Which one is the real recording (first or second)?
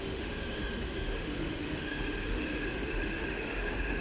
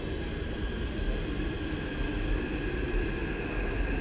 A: second